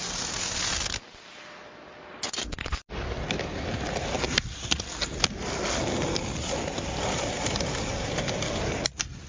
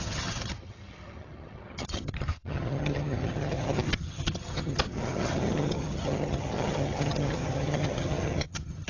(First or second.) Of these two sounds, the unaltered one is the first